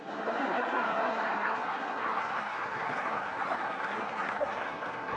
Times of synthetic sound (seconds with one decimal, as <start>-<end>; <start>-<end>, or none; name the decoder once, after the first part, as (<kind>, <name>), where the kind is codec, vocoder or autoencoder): 0.0-5.2 (codec, SNAC)